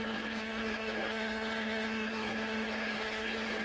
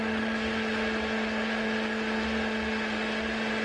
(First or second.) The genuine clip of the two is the second